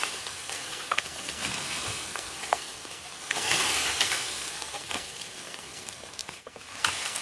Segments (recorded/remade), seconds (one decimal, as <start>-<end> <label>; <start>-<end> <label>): 0.0-7.2 remade